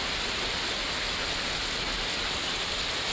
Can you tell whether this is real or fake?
real